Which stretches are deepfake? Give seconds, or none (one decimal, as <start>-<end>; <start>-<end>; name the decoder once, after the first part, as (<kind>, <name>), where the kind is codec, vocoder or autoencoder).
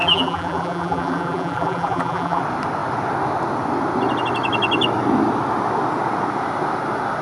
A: 0.0-2.4 (vocoder, BigVGAN v2)